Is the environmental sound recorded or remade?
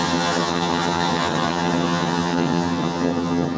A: remade